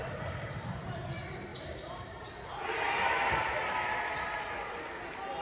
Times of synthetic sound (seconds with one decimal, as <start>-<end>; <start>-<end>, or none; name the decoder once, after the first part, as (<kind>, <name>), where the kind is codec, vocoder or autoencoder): 0.0-1.0 (vocoder, BigVGAN v2)